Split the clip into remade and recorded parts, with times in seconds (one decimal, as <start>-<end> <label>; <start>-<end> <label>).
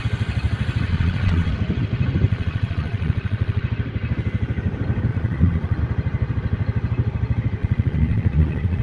0.0-0.9 recorded; 0.9-1.5 remade; 1.5-2.3 recorded; 2.3-3.6 remade; 3.6-5.1 recorded; 5.1-5.8 remade; 5.8-7.6 recorded; 7.6-8.8 remade